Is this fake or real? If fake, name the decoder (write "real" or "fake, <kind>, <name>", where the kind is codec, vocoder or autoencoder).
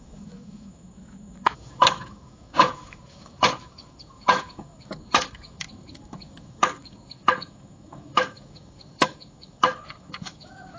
fake, autoencoder, DAC-VAE